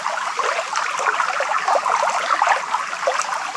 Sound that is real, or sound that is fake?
real